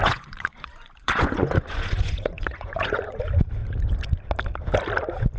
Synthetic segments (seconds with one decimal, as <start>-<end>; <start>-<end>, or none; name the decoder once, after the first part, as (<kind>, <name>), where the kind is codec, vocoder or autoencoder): 0.0-3.2 (vocoder, Vocos)